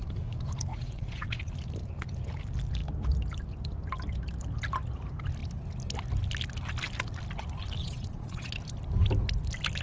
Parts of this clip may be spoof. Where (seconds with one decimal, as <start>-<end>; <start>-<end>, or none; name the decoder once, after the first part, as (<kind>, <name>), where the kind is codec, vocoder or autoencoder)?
0.7-1.5 (vocoder, Vocos); 7.8-8.6